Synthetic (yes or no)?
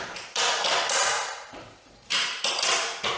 yes